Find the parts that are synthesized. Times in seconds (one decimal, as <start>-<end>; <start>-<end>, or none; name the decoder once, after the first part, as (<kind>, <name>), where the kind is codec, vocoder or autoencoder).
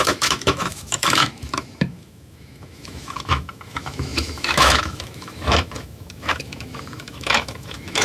0.0-8.0 (autoencoder, DAC-VAE)